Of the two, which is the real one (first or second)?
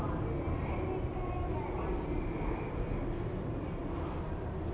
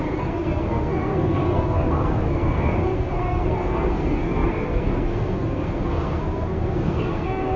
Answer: first